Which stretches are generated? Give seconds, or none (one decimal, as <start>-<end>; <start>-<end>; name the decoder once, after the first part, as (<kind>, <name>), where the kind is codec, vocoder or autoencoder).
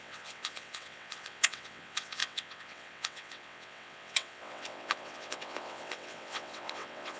0.0-7.2 (vocoder, WaveNeXt)